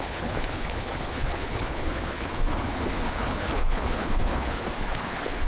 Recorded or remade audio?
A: remade